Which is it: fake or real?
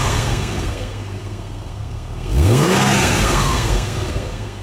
fake